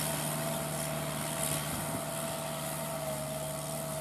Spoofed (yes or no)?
no